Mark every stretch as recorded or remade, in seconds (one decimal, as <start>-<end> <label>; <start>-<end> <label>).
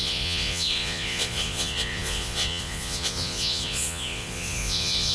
0.0-5.1 remade